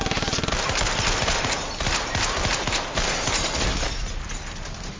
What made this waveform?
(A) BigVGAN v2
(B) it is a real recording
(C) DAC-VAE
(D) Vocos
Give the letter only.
B